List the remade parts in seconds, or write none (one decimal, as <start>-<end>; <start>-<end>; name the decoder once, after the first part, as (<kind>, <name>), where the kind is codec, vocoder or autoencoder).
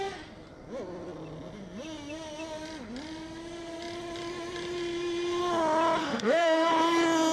6.0-6.7 (autoencoder, DAC-VAE)